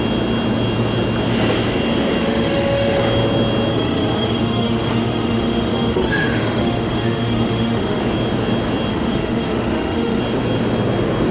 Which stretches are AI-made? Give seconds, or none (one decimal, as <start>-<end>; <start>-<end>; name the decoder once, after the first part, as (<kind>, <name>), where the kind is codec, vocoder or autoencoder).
2.2-3.0 (autoencoder, DAC-VAE); 3.7-8.0; 8.9-10.2